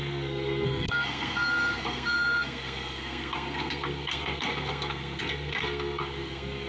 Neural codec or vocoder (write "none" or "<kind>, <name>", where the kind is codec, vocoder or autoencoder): codec, SNAC